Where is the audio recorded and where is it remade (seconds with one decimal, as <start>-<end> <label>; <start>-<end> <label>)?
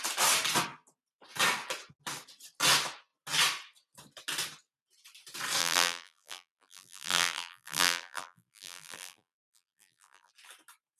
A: 0.0-5.6 recorded; 5.6-10.3 remade; 10.3-11.0 recorded